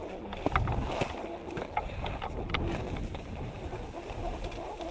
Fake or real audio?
real